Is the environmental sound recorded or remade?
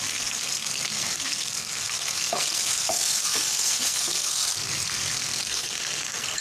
remade